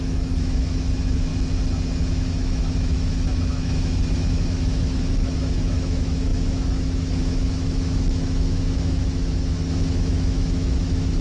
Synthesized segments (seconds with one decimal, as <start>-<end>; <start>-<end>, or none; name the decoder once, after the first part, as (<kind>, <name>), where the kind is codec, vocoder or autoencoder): 0.0-1.3 (autoencoder, DAC-VAE); 2.0-11.2